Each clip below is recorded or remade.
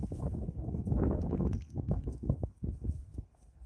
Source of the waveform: remade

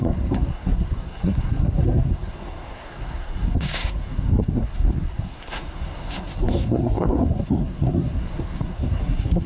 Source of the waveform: remade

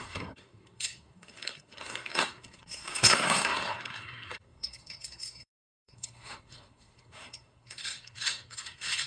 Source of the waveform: remade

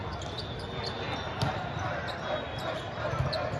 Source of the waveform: recorded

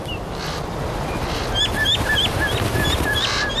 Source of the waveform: recorded